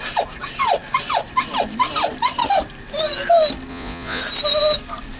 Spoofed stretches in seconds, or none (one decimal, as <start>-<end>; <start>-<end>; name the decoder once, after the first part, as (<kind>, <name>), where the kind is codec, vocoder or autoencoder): 3.7-4.2 (vocoder, Vocos)